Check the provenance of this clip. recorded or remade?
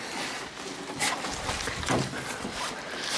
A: recorded